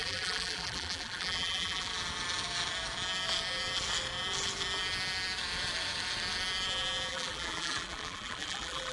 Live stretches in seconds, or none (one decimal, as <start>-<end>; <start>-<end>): 1.9-7.1